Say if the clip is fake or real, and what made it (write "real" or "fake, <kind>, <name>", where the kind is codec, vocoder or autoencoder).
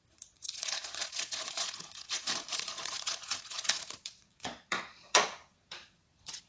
fake, vocoder, Vocos